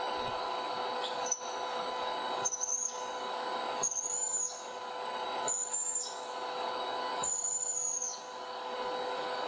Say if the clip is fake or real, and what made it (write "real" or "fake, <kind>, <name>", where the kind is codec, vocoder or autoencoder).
fake, codec, DAC